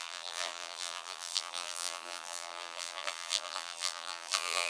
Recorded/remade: remade